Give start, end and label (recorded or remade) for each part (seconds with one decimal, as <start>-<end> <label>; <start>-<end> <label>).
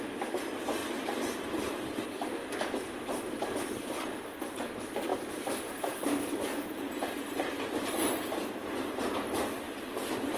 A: 0.0-0.8 recorded; 0.8-1.7 remade; 1.7-2.4 recorded; 2.4-3.2 remade; 3.2-5.1 recorded; 5.1-9.2 remade; 9.2-10.4 recorded